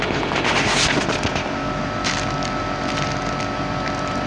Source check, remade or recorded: recorded